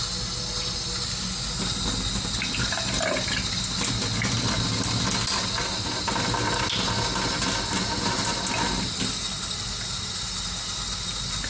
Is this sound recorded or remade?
recorded